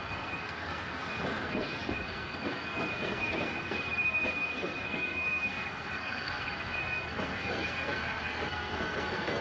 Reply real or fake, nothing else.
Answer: fake